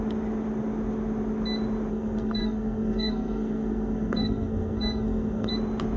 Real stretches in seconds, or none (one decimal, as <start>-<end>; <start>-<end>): 0.0-1.9; 5.5-6.0